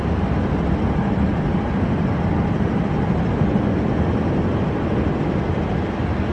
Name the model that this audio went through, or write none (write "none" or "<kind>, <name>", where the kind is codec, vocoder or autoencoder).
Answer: none